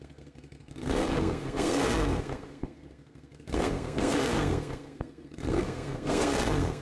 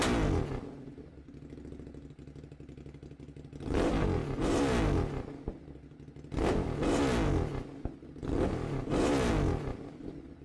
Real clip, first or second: second